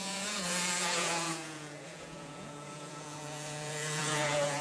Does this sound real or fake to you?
fake